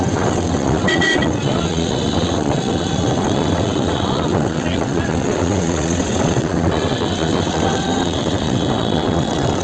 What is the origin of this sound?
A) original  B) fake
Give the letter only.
B